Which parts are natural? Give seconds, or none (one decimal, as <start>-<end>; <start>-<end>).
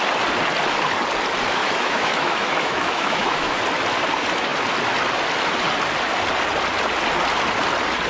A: 0.0-1.6; 3.6-8.1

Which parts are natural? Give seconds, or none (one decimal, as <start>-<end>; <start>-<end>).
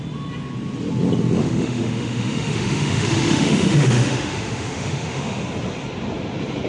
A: 0.0-1.4; 5.4-6.7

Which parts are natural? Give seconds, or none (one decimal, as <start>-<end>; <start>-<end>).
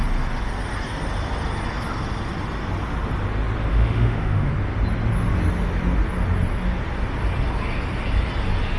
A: 0.0-3.7; 4.5-8.8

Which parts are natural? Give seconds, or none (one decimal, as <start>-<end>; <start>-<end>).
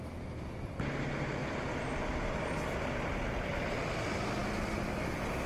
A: 0.0-5.5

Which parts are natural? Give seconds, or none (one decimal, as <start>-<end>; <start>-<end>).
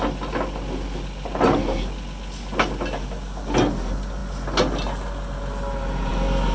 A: 0.0-6.5